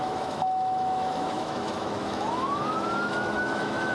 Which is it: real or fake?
fake